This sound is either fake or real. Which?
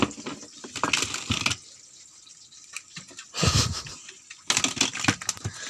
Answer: real